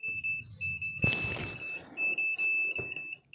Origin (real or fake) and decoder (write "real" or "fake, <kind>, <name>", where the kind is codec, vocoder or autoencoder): real